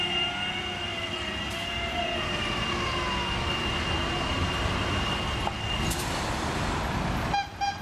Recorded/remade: recorded